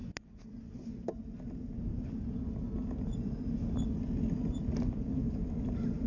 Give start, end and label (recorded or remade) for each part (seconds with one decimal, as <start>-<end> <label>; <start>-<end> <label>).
0.0-6.1 recorded

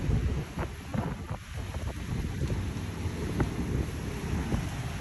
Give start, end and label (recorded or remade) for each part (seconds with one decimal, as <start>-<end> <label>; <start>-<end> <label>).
0.0-5.0 recorded

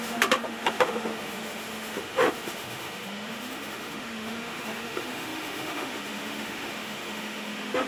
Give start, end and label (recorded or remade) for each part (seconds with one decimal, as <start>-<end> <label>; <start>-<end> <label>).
0.0-7.9 remade

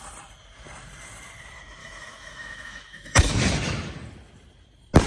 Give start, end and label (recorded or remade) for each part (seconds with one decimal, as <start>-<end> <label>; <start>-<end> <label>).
0.0-1.8 recorded; 1.8-3.3 remade; 3.3-5.1 recorded

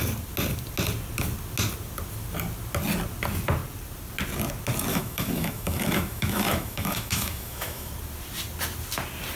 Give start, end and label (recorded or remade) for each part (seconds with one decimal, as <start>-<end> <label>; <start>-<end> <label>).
0.0-4.9 recorded; 4.9-7.9 remade; 7.9-9.4 recorded

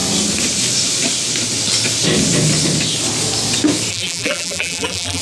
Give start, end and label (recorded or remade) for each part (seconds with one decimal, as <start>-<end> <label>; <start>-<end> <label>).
0.0-3.9 recorded; 3.9-5.2 remade

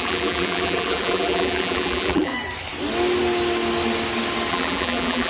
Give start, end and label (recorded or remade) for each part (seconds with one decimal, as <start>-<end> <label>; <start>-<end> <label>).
0.0-2.3 remade; 2.3-4.5 recorded; 4.5-5.3 remade